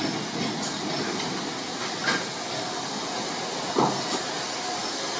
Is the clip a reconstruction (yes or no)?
no